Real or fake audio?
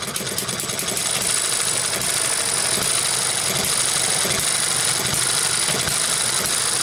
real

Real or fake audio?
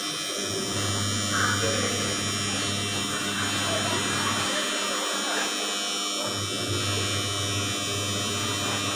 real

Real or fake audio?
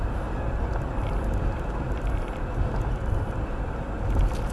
fake